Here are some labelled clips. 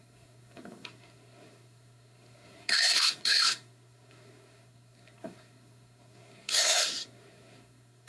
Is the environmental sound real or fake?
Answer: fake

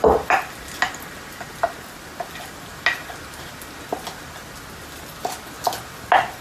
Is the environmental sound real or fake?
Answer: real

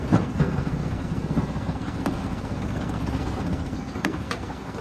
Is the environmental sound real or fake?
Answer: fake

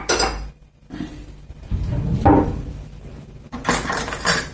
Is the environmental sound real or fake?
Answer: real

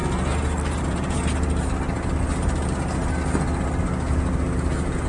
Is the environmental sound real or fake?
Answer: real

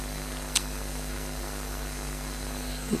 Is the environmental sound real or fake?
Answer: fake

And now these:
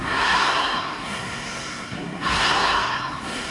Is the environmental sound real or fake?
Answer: fake